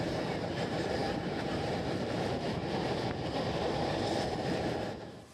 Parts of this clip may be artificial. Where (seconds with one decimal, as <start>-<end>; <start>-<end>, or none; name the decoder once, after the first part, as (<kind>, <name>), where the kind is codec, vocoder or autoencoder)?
0.0-2.6 (vocoder, BigVGAN v2); 4.4-5.3